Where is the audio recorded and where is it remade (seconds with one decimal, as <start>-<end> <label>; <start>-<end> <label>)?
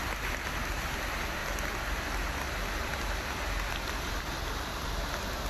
0.0-5.5 recorded